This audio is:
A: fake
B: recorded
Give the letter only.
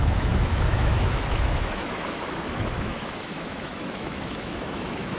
A